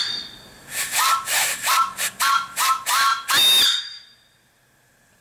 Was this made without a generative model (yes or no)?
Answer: yes